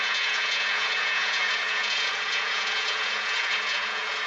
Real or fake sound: fake